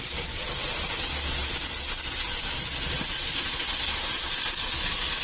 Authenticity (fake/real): real